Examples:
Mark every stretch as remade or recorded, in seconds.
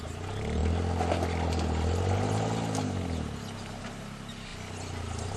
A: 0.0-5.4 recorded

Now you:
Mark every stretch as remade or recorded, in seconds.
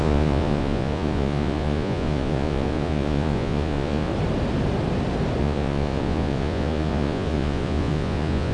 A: 0.0-4.1 remade; 4.1-5.4 recorded; 5.4-8.5 remade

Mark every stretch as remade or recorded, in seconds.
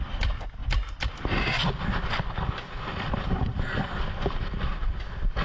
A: 0.0-5.4 recorded